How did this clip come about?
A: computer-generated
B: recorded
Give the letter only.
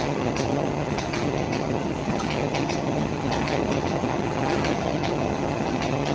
A